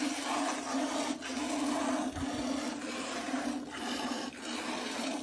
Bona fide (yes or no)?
yes